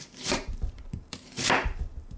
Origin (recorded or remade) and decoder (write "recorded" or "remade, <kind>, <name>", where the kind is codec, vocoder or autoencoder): remade, vocoder, BigVGAN v2